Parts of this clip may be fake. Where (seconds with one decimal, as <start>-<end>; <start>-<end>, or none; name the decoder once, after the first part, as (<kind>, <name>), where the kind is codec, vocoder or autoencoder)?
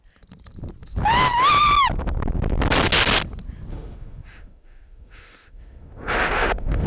3.7-6.9 (autoencoder, DAC-VAE)